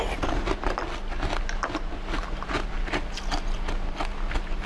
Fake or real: real